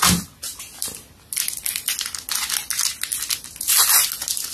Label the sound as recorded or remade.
recorded